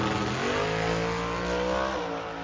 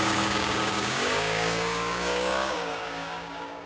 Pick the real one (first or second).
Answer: first